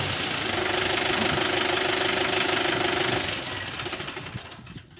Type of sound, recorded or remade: recorded